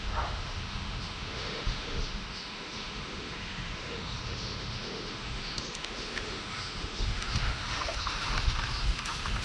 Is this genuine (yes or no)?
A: no